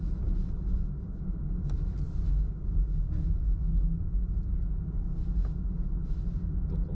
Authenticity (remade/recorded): recorded